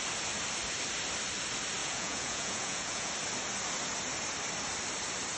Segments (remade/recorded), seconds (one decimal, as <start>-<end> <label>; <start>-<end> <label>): 0.0-1.8 recorded; 1.8-3.1 remade; 3.1-5.4 recorded